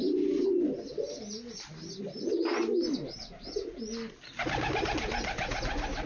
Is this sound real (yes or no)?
yes